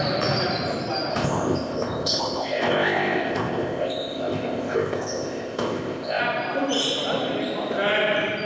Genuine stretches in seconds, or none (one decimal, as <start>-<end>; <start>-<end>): 0.0-1.1; 6.2-8.5